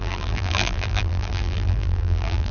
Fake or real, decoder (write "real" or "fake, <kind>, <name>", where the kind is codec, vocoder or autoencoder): fake, vocoder, BigVGAN v2